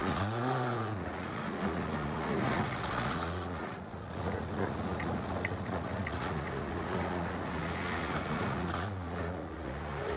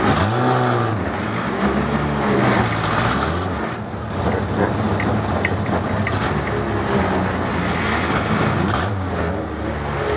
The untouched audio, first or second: second